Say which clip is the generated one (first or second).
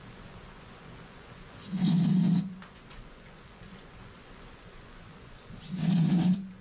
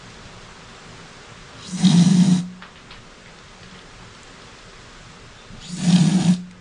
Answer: first